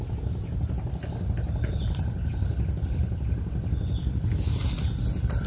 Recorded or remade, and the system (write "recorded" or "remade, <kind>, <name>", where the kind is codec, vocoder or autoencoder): recorded